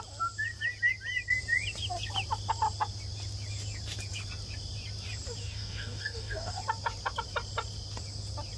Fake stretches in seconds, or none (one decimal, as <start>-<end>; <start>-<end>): 5.4-6.6